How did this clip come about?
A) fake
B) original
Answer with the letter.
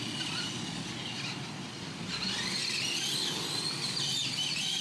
B